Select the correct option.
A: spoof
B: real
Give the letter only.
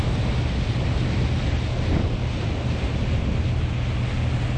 B